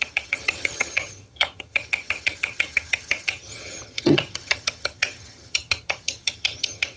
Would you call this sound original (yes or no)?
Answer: no